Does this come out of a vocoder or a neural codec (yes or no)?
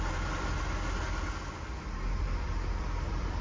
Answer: yes